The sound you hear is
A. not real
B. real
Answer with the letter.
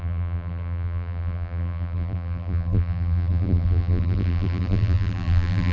A